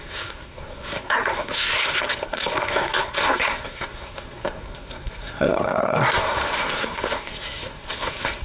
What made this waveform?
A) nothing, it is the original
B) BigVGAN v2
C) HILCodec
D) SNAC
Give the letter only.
D